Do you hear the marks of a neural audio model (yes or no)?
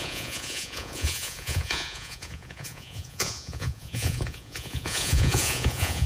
yes